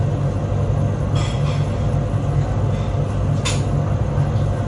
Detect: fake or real real